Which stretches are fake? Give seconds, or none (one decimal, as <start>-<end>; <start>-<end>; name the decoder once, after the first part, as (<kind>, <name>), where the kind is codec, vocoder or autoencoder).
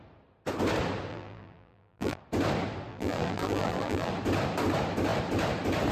1.1-2.2 (vocoder, BigVGAN v2); 2.9-4.1